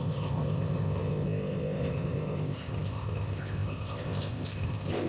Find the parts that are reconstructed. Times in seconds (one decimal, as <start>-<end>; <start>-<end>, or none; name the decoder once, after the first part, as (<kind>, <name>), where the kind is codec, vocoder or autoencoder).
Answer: 0.0-5.1 (codec, ZipCodec)